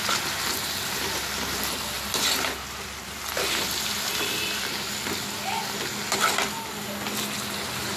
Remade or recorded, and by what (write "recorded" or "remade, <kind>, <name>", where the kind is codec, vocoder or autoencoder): recorded